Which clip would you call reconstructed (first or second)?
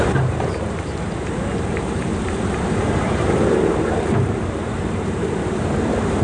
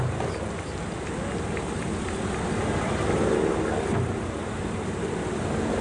first